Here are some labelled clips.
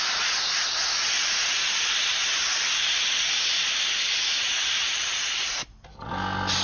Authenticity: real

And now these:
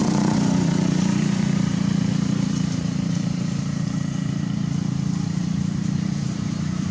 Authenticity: fake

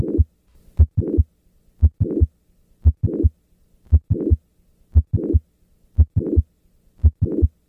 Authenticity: real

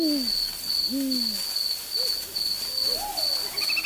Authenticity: real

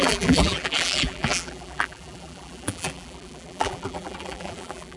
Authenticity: fake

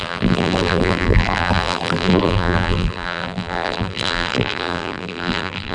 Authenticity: fake